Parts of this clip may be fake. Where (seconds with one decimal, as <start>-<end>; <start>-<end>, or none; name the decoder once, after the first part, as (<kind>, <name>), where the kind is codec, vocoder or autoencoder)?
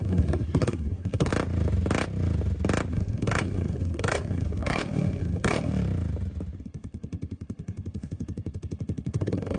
0.0-1.3 (codec, SNAC); 2.9-5.7; 6.6-9.6